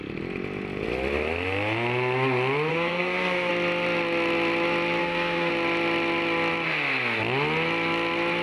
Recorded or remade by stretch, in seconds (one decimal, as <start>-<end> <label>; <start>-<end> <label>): 0.0-2.7 recorded; 2.7-3.5 remade; 3.5-5.0 recorded; 5.0-5.5 remade; 5.5-8.4 recorded